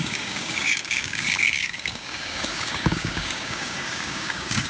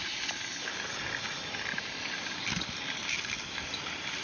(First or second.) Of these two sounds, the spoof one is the first